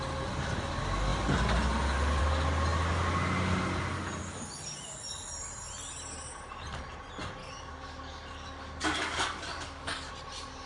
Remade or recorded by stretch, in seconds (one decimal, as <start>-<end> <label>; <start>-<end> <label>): 0.0-7.4 recorded; 7.4-10.1 remade; 10.1-10.7 recorded